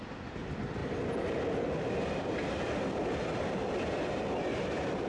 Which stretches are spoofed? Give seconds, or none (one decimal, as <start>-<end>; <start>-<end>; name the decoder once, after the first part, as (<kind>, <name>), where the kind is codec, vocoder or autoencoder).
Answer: none